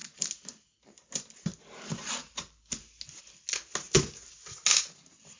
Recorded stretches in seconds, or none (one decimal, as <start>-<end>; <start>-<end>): 0.0-5.4